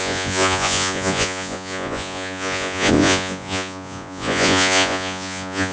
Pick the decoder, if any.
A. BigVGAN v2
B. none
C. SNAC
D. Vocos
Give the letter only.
D